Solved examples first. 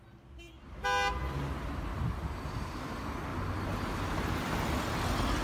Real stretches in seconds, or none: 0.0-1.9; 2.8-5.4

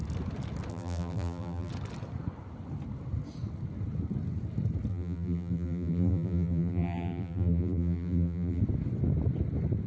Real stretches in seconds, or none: 0.0-0.7; 1.7-4.9; 8.6-9.9

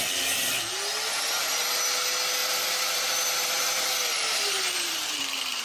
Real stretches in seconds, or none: 0.0-2.4

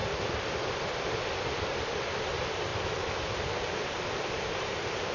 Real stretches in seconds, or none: 0.0-2.7